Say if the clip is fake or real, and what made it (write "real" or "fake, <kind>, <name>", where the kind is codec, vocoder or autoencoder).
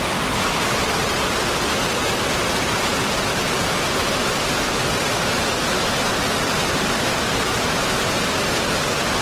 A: real